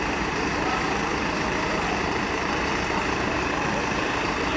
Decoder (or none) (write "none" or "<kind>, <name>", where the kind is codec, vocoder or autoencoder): vocoder, BigVGAN v2